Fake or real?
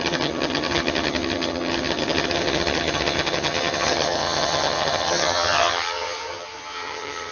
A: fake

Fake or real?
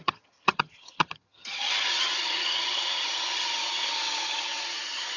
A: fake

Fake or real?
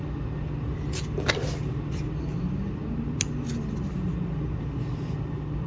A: real